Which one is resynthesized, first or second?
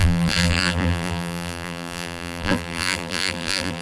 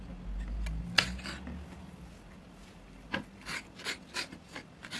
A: first